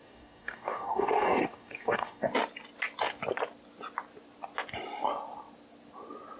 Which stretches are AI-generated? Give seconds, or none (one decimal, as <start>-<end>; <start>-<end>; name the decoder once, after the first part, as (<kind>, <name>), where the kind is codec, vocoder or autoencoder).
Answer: 0.0-2.3 (codec, DAC)